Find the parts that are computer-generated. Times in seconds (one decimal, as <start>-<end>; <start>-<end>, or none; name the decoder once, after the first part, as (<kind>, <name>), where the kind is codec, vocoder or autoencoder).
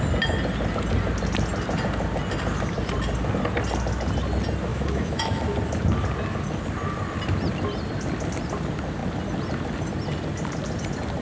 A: 4.7-5.4 (autoencoder, DAC-VAE)